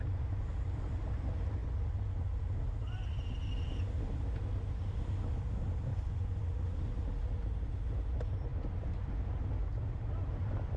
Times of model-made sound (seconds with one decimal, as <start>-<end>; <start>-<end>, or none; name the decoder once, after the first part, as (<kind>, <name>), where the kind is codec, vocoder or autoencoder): 5.9-6.4 (vocoder, Vocos)